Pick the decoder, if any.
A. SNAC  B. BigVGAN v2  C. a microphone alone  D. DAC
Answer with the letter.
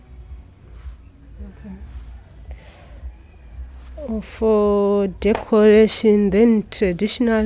C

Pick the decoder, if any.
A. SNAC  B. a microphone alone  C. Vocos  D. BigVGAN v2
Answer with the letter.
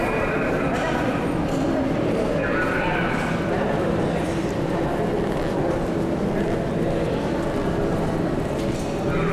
B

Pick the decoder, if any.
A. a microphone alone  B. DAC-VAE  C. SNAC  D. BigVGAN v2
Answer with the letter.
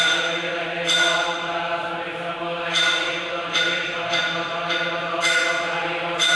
A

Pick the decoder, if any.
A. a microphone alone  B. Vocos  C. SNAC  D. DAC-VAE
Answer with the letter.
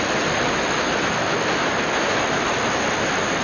A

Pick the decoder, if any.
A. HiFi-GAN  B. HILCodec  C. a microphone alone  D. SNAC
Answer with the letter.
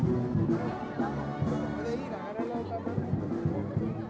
C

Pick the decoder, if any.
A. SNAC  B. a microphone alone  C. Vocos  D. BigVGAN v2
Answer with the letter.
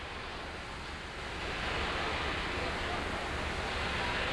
B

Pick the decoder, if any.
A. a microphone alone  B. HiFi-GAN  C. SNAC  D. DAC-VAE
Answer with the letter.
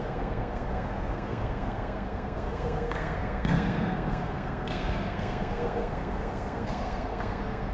C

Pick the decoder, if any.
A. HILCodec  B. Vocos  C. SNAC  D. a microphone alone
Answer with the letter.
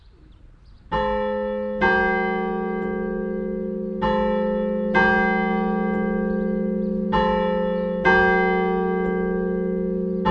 D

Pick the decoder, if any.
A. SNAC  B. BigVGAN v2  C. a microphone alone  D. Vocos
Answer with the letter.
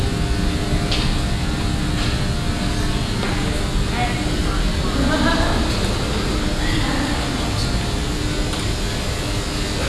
C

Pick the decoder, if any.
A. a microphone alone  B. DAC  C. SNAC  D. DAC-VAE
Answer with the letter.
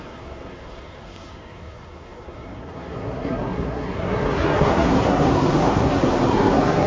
C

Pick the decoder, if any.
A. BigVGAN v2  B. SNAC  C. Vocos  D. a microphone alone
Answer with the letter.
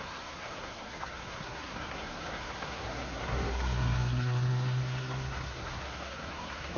B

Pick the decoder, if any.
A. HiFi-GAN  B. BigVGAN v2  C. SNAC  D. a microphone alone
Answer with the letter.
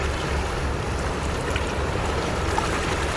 D